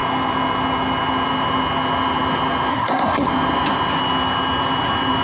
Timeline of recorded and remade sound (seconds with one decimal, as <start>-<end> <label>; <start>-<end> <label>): 0.0-2.7 recorded; 2.7-3.3 remade; 3.3-5.2 recorded